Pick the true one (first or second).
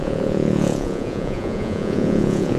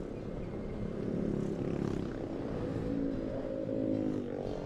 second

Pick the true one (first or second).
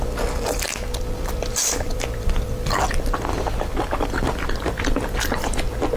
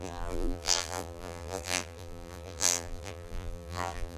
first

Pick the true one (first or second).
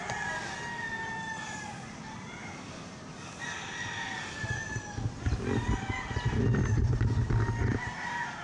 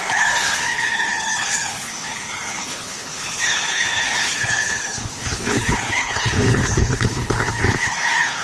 first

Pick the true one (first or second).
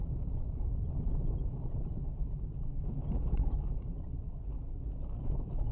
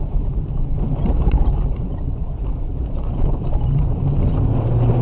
first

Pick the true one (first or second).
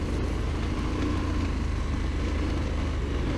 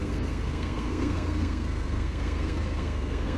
first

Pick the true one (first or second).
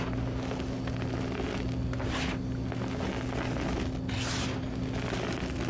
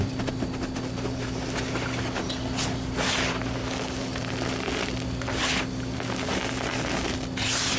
first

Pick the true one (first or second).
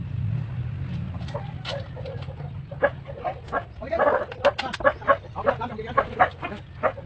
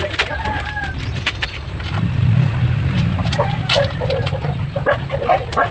first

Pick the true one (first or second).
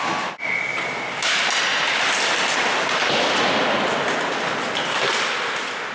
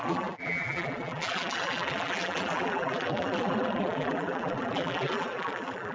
first